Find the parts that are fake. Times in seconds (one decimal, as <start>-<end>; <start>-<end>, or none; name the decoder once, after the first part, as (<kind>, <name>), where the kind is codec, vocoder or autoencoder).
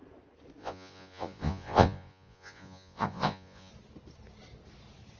0.6-3.7 (vocoder, Vocos)